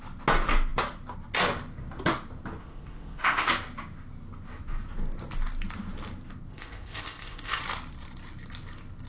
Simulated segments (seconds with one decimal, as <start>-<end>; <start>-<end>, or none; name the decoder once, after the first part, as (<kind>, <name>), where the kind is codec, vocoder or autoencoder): 2.6-3.5 (codec, ZipCodec); 6.5-7.6